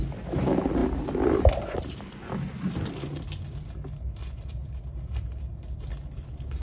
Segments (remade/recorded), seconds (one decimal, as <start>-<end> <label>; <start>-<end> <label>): 0.0-6.6 recorded

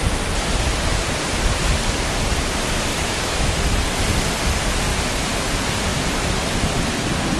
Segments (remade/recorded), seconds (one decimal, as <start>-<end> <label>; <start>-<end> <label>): 0.0-2.9 recorded; 2.9-3.6 remade; 3.6-4.9 recorded; 4.9-5.5 remade; 5.5-7.4 recorded

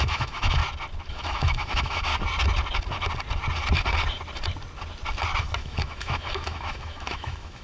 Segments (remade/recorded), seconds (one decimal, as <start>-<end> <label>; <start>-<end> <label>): 0.0-0.6 remade; 0.6-1.1 recorded; 1.1-2.1 remade; 2.1-5.4 recorded; 5.4-7.6 remade

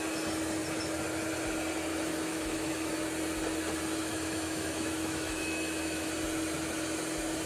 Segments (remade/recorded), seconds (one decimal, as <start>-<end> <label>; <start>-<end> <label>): 0.0-1.9 recorded; 1.9-2.9 remade; 2.9-4.0 recorded; 4.0-6.1 remade; 6.1-7.5 recorded

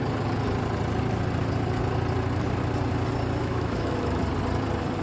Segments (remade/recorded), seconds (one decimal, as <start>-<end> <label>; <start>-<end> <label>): 0.0-3.4 recorded; 3.4-4.2 remade; 4.2-5.0 recorded

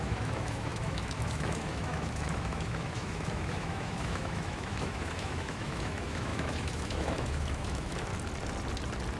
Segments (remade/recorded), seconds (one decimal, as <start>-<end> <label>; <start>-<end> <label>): 0.0-8.1 remade; 8.1-9.2 recorded

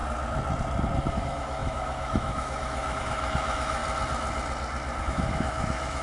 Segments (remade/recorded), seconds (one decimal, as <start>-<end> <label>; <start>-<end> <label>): 0.0-1.1 recorded; 1.1-3.8 remade; 3.8-5.0 recorded; 5.0-6.0 remade

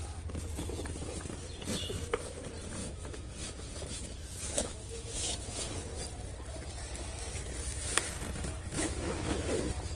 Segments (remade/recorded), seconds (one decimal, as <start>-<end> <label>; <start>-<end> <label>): 0.0-2.8 recorded; 2.8-6.0 remade; 6.0-7.7 recorded; 7.7-8.2 remade; 8.2-8.7 recorded; 8.7-9.5 remade; 9.5-10.0 recorded